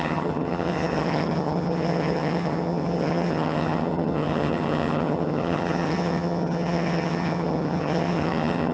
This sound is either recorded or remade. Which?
remade